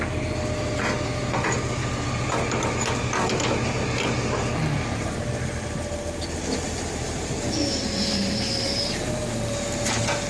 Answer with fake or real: real